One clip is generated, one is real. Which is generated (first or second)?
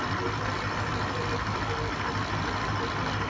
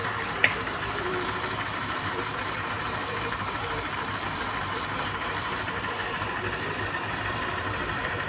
second